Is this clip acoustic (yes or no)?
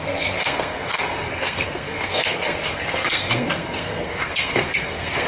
no